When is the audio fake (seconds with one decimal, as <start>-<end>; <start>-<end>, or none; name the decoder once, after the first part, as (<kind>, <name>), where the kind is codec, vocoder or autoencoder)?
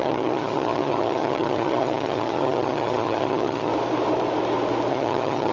0.0-3.7 (vocoder, HiFi-GAN); 4.9-5.5